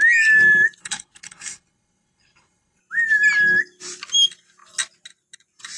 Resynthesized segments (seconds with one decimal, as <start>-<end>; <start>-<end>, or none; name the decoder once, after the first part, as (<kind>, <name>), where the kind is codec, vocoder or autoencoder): 0.8-2.8 (codec, HILCodec)